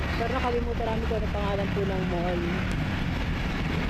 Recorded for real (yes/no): yes